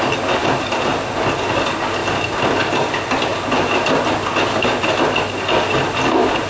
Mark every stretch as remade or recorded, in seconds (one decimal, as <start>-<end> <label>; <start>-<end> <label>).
0.0-6.5 recorded